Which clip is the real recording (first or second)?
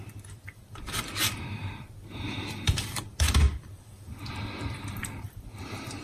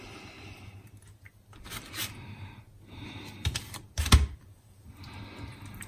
second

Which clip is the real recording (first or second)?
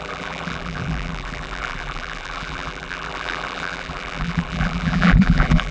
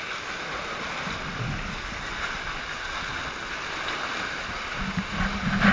second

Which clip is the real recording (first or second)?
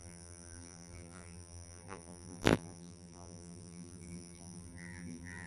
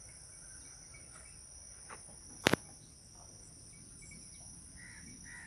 second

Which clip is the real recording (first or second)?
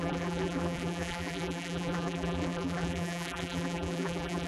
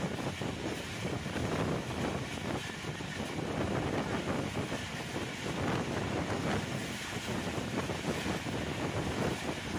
second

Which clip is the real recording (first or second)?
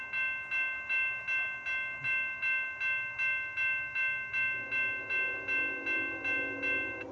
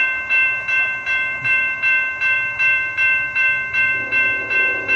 first